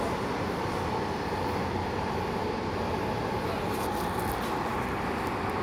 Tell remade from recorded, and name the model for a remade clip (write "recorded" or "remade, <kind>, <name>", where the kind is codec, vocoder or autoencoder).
recorded